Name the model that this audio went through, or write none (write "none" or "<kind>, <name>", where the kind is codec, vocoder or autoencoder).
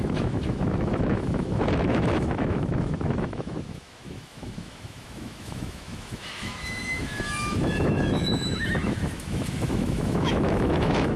autoencoder, DAC-VAE